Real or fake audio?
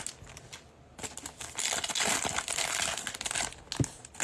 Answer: real